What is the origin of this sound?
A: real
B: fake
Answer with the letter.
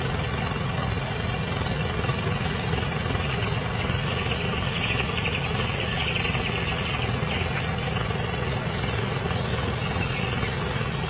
B